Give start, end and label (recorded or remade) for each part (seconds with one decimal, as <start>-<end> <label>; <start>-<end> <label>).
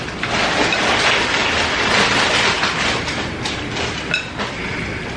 0.0-5.2 recorded